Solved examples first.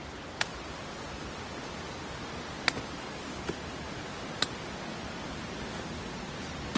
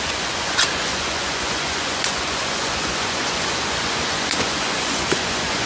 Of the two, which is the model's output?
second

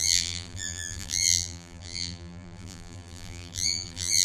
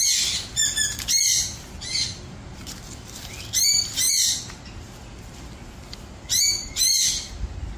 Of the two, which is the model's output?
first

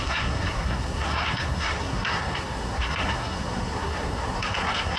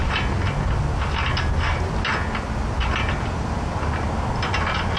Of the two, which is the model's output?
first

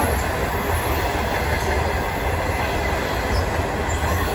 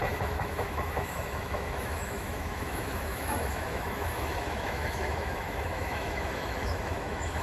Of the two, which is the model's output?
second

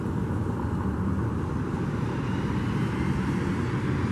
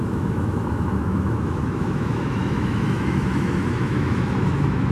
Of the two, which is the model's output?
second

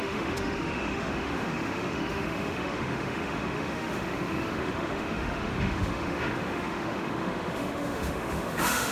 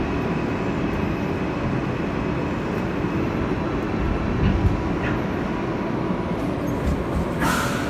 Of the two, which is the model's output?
first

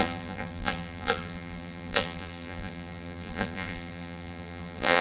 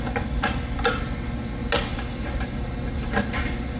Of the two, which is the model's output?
first